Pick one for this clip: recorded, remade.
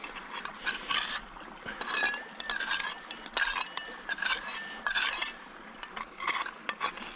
recorded